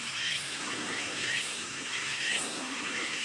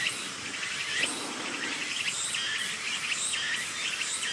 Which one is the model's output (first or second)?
first